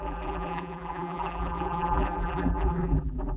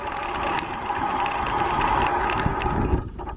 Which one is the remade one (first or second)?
first